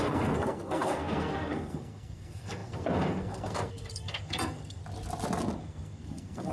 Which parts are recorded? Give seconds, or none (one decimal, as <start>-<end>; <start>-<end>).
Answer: 4.8-5.6